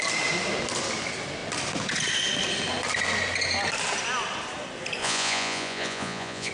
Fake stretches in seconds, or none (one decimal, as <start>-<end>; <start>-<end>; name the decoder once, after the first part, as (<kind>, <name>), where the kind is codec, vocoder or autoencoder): 5.0-6.5 (vocoder, Vocos)